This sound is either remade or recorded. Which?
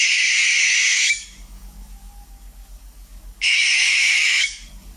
remade